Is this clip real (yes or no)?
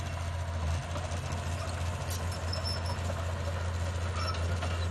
yes